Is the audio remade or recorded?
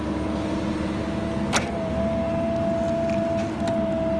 recorded